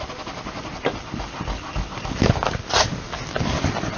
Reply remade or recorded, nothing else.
recorded